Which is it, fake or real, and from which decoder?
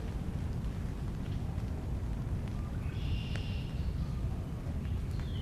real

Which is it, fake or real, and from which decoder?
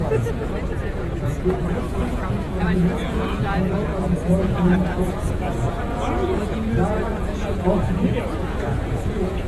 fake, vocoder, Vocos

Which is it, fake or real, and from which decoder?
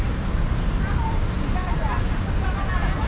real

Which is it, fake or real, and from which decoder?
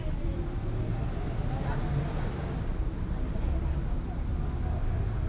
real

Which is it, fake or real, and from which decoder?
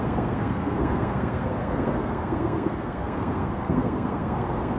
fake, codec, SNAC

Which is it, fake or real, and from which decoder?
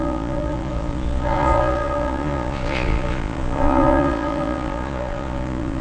fake, vocoder, Vocos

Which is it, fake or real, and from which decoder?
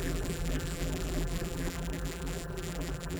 fake, vocoder, BigVGAN v2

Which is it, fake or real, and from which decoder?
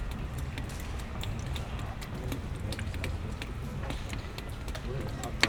real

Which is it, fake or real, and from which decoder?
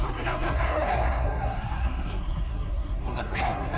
fake, codec, SNAC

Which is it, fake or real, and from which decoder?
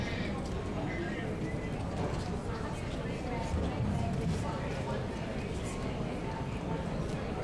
real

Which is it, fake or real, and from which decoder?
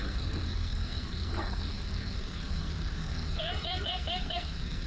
fake, codec, SNAC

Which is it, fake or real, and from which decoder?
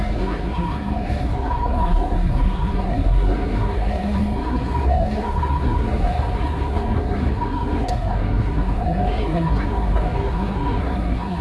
fake, codec, SNAC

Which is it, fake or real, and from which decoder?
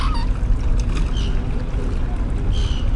real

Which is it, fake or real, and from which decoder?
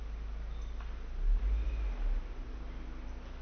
real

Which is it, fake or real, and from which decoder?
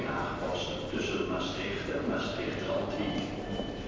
fake, vocoder, BigVGAN v2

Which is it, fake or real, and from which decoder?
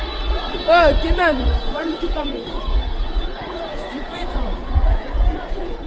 fake, vocoder, Vocos